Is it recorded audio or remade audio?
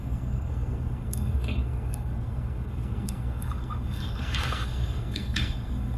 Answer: remade